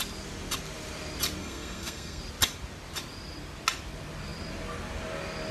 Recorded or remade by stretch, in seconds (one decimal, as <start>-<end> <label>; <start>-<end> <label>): 0.0-1.4 recorded; 1.4-2.2 remade; 2.2-5.5 recorded